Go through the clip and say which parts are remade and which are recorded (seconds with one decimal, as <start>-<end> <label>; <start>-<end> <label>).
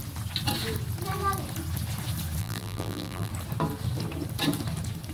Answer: 0.0-2.4 recorded; 2.4-3.3 remade; 3.3-5.1 recorded